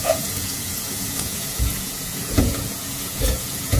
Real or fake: fake